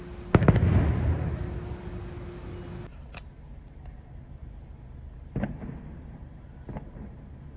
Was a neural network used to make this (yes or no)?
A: no